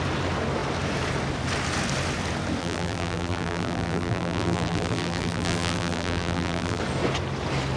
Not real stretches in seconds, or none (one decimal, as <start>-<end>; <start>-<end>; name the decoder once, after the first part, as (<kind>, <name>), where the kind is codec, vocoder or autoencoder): 2.6-6.8 (vocoder, BigVGAN v2)

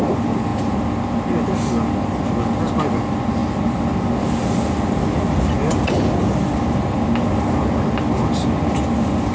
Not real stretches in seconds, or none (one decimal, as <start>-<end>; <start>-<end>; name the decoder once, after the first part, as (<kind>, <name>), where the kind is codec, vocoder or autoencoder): none